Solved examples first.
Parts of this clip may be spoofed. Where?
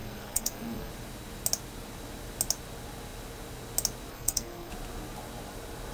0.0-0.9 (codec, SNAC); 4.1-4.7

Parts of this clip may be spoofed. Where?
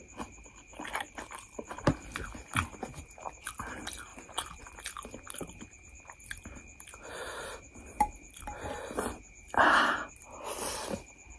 none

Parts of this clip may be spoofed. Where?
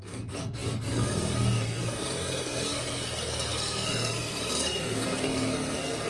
0.0-6.1 (codec, SNAC)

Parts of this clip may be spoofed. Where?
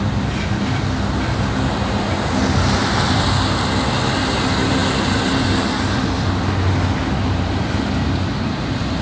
none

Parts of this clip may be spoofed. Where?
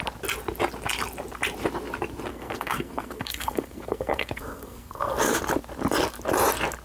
2.3-5.4 (codec, SNAC)